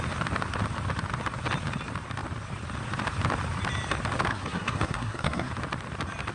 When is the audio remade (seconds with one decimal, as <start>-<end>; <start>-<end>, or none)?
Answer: 4.3-5.5